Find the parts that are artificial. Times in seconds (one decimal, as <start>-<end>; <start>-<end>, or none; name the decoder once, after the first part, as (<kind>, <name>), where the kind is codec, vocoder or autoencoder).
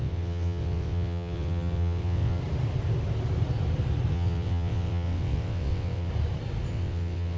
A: 0.0-2.4 (vocoder, WaveNeXt); 4.1-6.1; 6.7-7.4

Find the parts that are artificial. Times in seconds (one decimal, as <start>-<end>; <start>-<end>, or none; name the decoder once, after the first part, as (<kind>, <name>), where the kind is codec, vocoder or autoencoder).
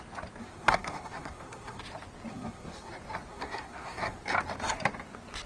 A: 0.4-1.8 (codec, SNAC); 2.3-2.9; 3.3-4.2